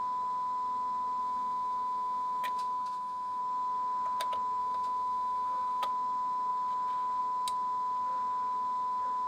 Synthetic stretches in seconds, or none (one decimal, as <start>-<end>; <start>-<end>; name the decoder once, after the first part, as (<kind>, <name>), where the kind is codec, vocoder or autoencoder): 1.2-3.4 (autoencoder, DAC-VAE); 4.6-5.9